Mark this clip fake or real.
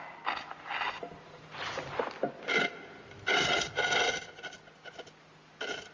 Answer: real